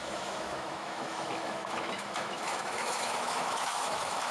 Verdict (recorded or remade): remade